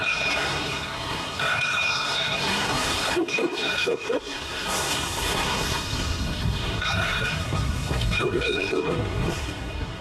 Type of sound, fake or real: fake